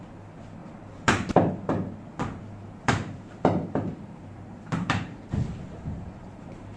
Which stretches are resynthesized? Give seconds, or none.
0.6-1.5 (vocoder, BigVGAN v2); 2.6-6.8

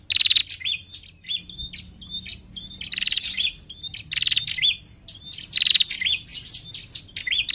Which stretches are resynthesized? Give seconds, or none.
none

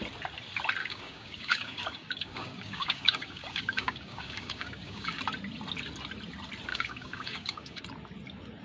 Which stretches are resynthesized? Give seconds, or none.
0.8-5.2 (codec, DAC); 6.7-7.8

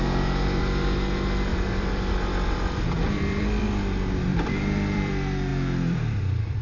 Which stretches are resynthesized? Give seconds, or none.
1.5-3.6 (vocoder, BigVGAN v2); 4.3-5.1; 5.5-6.6

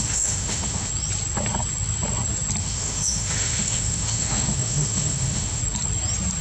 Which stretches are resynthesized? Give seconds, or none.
0.0-0.9 (autoencoder, DAC-VAE); 2.6-5.6

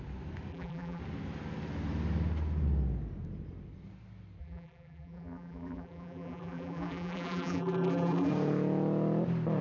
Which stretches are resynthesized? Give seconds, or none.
0.5-1.0 (vocoder, BigVGAN v2); 4.4-8.3

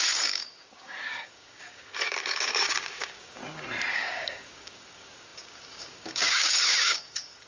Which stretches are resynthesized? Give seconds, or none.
0.0-3.4 (codec, DAC); 3.9-7.5

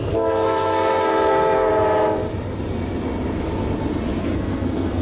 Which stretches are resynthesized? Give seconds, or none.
0.0-1.7 (codec, SNAC); 4.2-5.0